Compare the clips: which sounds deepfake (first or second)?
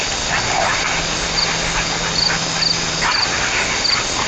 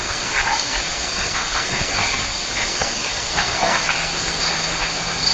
second